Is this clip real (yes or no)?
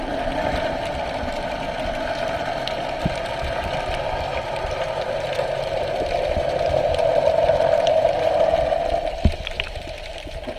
yes